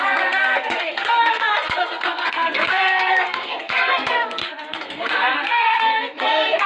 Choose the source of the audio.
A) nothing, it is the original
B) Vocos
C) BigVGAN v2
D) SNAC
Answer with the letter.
D